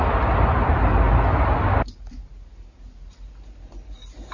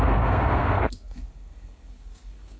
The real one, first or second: first